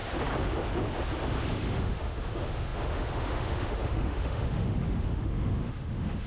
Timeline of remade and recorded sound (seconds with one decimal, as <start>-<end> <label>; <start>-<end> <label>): 0.0-1.4 recorded; 1.4-6.3 remade